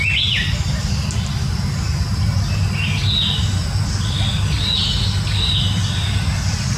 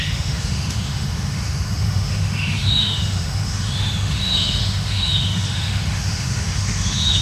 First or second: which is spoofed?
second